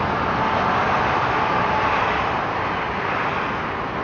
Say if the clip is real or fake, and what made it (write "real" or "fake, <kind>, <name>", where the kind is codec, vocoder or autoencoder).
real